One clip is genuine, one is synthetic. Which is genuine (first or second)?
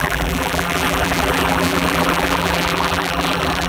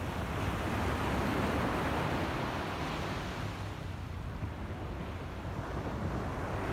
second